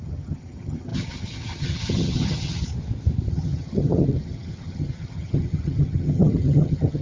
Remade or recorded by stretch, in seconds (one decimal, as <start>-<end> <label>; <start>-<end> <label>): 0.0-2.6 remade; 2.6-3.3 recorded; 3.3-7.0 remade